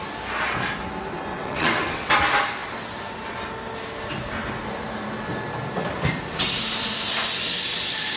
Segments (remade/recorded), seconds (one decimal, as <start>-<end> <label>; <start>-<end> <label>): 0.0-1.3 recorded; 1.3-2.1 remade; 2.1-8.2 recorded